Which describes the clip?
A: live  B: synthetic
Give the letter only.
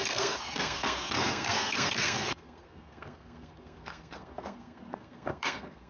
B